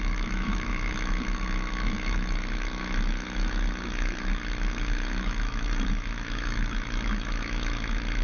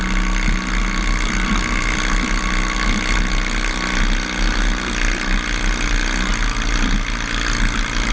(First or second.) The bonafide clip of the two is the second